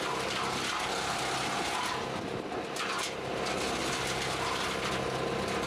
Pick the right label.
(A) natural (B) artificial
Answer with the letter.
A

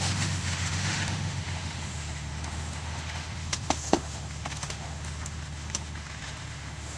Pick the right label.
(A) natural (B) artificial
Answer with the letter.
B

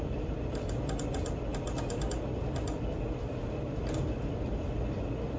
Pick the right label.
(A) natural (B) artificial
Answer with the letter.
A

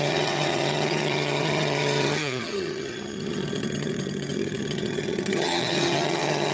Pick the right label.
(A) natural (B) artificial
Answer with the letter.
B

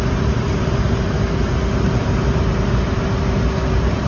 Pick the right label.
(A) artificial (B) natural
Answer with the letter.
A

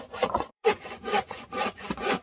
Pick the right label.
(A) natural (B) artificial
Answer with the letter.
B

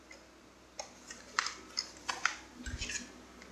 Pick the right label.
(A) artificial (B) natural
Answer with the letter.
B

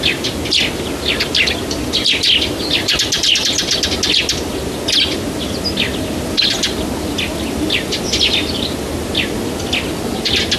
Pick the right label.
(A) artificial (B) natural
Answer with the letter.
B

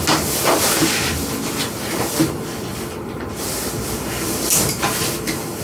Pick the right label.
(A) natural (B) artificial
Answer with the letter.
A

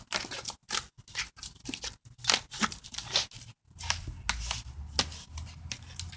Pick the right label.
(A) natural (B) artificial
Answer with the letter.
A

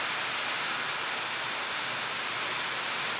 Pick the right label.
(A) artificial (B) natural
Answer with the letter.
B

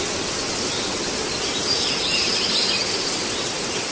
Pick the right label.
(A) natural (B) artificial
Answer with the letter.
A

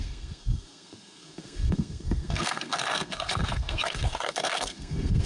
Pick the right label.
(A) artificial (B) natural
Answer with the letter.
A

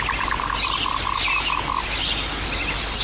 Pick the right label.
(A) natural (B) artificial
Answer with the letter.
A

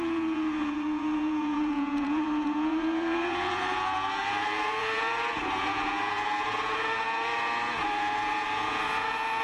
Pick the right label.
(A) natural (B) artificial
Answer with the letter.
B